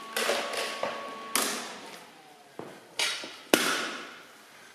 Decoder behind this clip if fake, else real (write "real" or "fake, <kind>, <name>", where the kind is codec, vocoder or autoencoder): real